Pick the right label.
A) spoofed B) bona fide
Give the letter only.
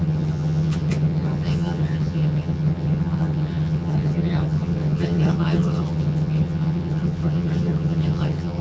A